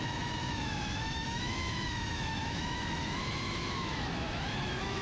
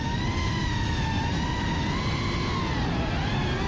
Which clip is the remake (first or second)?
first